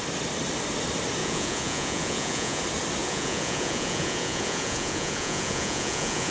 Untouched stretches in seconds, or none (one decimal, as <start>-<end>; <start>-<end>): 0.0-1.2; 2.6-3.0